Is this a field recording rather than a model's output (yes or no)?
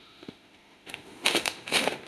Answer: no